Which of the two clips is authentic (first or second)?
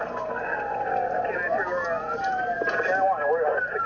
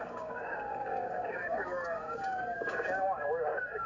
first